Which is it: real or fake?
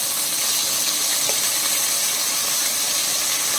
real